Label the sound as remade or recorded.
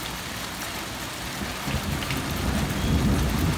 recorded